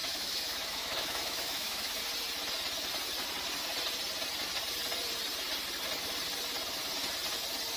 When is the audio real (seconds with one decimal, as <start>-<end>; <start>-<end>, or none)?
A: 2.0-7.8